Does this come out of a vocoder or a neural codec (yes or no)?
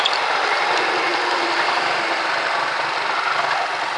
no